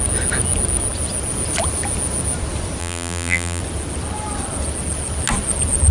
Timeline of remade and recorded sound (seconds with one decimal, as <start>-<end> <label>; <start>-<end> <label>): 0.0-2.8 recorded; 2.8-3.6 remade; 3.6-5.9 recorded